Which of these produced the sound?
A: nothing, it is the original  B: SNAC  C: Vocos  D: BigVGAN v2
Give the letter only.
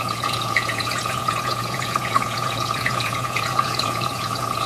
C